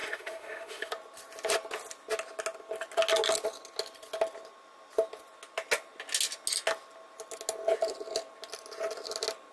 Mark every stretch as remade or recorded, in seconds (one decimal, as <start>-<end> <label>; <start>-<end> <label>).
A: 0.0-0.9 remade; 0.9-9.5 recorded